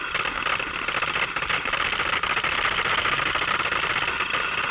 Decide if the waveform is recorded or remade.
recorded